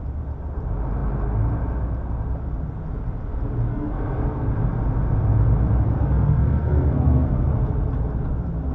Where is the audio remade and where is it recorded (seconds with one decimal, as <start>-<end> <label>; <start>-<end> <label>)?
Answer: 0.0-3.7 recorded; 3.7-4.5 remade; 4.5-6.0 recorded; 6.0-7.5 remade; 7.5-8.7 recorded